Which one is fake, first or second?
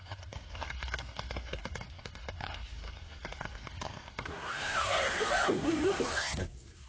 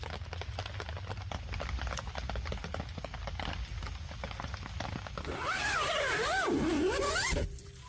first